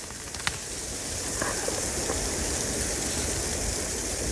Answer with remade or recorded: recorded